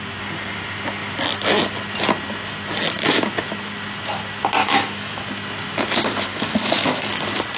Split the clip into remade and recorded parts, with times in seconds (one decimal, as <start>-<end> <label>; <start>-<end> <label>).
0.0-4.6 recorded; 4.6-5.2 remade; 5.2-6.3 recorded; 6.3-7.1 remade; 7.1-7.6 recorded